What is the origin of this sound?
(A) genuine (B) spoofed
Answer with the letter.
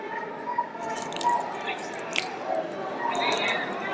A